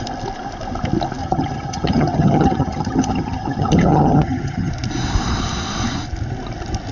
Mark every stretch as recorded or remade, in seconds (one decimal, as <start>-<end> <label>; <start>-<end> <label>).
0.0-1.2 recorded; 1.2-4.7 remade; 4.7-6.9 recorded